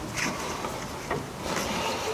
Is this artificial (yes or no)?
no